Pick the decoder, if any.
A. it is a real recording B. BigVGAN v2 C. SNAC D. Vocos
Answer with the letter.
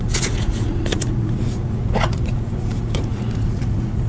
D